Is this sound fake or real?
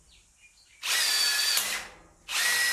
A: real